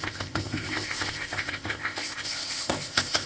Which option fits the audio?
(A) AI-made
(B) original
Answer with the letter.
A